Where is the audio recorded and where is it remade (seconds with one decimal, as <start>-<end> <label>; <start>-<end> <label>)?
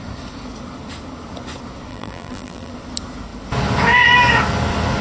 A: 0.0-1.9 recorded; 1.9-2.7 remade; 2.7-5.0 recorded